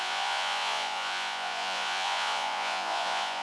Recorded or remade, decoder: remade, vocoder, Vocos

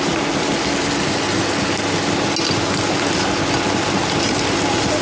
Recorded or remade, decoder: recorded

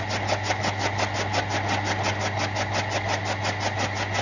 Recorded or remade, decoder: recorded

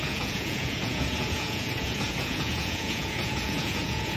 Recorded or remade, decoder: remade, vocoder, Vocos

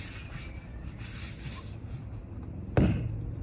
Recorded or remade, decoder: recorded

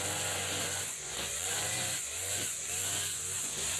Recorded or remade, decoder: remade, vocoder, Vocos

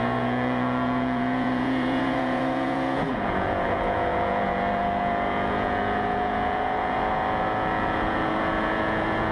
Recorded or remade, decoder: remade, vocoder, Vocos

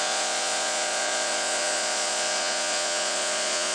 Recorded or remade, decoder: remade, vocoder, Vocos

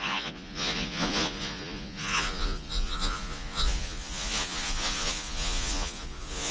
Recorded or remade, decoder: remade, vocoder, Vocos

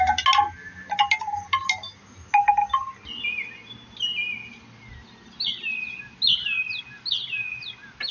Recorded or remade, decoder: recorded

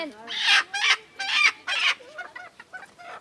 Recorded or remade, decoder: recorded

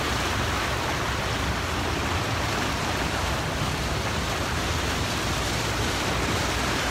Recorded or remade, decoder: recorded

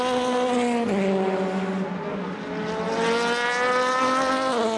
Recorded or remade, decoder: recorded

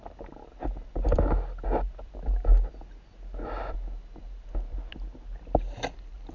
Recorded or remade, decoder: recorded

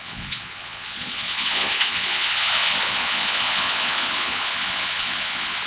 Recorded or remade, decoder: remade, vocoder, Vocos